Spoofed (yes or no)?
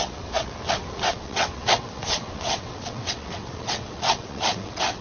yes